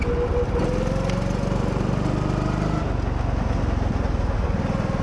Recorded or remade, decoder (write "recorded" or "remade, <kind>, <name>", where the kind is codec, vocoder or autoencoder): recorded